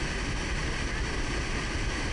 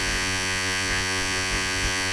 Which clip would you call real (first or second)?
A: first